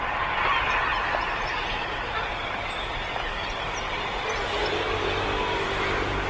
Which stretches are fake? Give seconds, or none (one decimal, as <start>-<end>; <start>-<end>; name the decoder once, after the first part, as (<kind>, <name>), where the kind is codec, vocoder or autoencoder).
0.9-2.8 (vocoder, BigVGAN v2); 4.6-5.2